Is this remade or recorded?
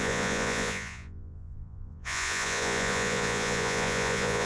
remade